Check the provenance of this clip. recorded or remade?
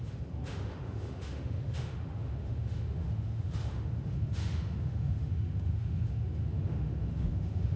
remade